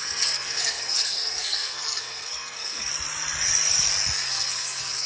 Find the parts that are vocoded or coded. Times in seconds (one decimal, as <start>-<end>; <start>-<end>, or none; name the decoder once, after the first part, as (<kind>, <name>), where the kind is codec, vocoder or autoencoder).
0.0-2.9 (codec, SNAC); 4.3-5.1